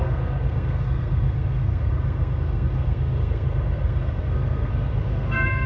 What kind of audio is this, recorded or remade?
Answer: remade